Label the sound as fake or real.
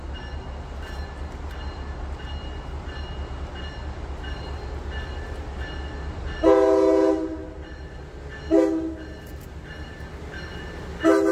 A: real